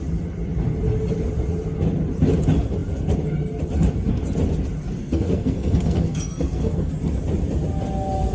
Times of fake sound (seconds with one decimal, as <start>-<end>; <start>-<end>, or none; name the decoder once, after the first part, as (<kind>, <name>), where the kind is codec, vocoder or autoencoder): 5.0-6.9 (codec, SNAC)